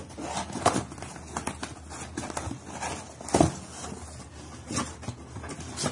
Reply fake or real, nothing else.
real